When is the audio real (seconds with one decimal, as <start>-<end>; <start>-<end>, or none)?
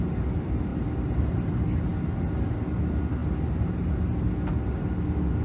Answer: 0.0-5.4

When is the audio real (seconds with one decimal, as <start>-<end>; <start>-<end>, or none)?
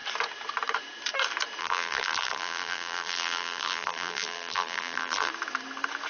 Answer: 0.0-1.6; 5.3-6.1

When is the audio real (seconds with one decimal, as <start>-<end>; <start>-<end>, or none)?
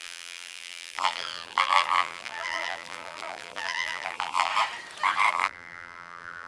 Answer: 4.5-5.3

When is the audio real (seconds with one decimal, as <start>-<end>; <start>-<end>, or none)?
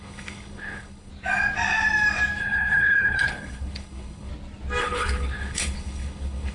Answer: 1.1-2.4; 4.3-4.8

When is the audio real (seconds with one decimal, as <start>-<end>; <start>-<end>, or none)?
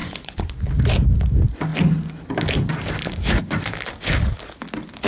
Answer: 0.6-5.1